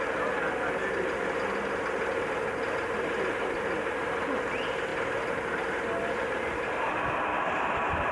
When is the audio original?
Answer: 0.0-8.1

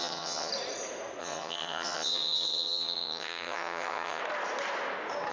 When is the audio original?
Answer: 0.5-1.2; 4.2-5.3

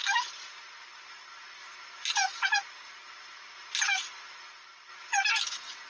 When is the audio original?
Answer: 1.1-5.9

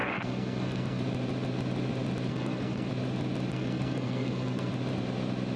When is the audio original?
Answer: 1.0-2.3; 2.9-3.5; 4.7-5.6

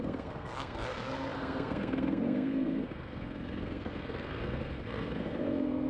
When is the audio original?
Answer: none

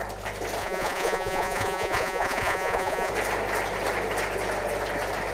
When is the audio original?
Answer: 0.0-0.6; 3.1-5.3

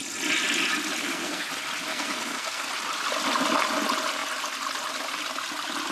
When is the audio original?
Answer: 0.0-1.0; 1.5-1.9; 2.7-5.9